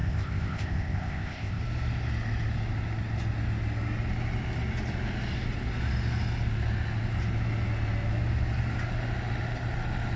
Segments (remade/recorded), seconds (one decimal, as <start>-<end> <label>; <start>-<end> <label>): 0.0-1.6 remade; 1.6-10.2 recorded